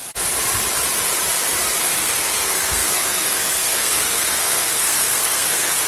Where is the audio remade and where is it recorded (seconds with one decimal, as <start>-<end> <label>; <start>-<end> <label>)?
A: 0.0-1.8 recorded; 1.8-5.9 remade